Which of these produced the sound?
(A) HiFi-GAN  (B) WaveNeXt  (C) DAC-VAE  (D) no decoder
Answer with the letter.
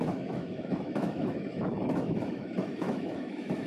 C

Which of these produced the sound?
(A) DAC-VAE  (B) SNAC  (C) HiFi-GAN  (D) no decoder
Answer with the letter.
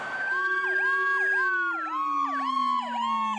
D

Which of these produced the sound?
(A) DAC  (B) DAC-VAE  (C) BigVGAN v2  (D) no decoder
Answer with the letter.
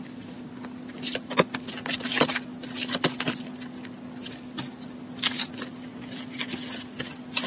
D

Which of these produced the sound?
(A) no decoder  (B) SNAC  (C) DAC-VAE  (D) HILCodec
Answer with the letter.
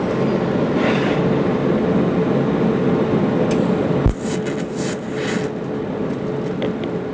A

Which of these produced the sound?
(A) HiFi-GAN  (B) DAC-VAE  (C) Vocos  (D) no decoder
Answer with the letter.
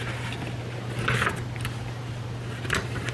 D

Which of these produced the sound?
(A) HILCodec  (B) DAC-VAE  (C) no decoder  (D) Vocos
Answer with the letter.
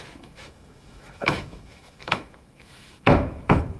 B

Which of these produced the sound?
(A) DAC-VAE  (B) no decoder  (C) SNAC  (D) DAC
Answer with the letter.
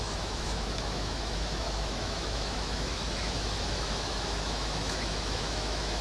A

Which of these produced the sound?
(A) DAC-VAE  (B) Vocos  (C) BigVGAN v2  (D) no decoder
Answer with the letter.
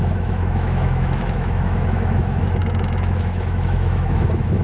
A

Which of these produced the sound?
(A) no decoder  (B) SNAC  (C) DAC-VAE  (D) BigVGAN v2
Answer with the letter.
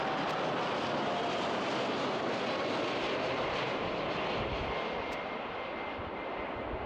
A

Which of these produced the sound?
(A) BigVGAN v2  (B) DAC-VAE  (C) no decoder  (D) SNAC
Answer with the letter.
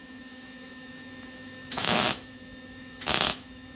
B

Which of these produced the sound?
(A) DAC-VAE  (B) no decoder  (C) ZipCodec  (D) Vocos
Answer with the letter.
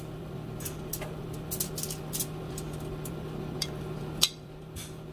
B